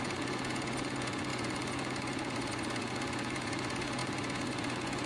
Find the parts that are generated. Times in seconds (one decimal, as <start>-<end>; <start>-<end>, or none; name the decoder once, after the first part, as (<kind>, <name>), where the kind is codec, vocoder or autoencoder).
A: 0.0-5.1 (vocoder, Vocos)